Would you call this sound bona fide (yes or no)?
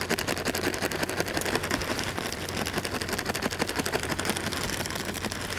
yes